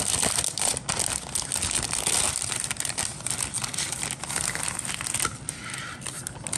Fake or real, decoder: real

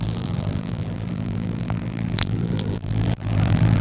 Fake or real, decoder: fake, vocoder, BigVGAN v2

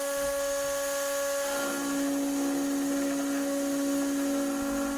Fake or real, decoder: real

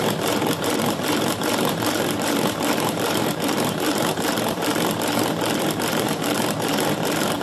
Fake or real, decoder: fake, vocoder, BigVGAN v2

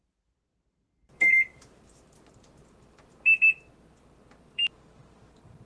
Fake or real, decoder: fake, vocoder, BigVGAN v2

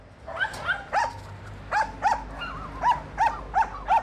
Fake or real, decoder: real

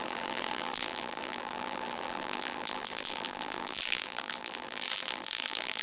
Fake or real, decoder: fake, vocoder, BigVGAN v2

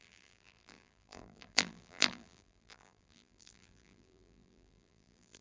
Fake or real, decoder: fake, vocoder, BigVGAN v2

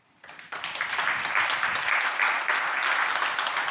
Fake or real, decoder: real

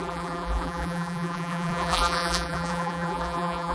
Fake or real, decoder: fake, vocoder, BigVGAN v2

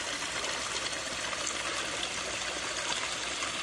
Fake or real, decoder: real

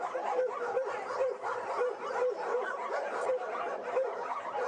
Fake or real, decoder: real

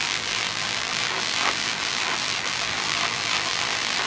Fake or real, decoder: fake, vocoder, BigVGAN v2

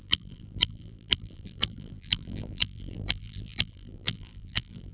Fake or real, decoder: fake, vocoder, BigVGAN v2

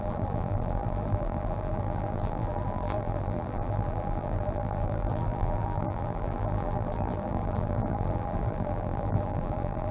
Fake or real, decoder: fake, vocoder, BigVGAN v2